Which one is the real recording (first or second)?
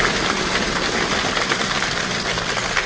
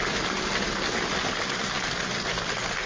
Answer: second